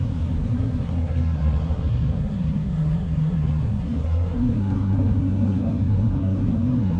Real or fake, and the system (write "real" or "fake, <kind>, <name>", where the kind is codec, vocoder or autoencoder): fake, codec, SNAC